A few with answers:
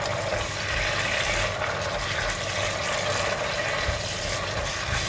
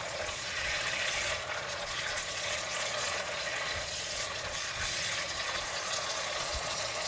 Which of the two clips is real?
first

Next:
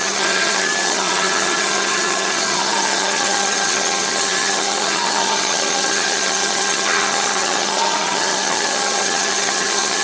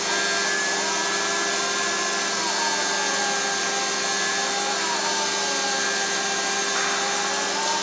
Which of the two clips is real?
second